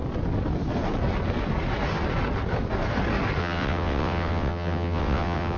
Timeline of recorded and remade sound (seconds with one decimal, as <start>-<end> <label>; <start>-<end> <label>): 0.0-3.4 recorded; 3.4-5.6 remade